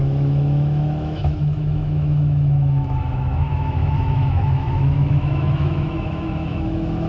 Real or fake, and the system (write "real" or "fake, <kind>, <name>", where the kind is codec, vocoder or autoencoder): fake, autoencoder, DAC-VAE